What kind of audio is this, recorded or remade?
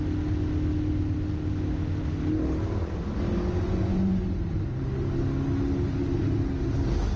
recorded